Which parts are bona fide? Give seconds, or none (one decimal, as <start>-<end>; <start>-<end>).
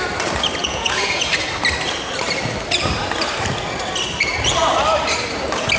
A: 0.0-0.6; 1.3-5.8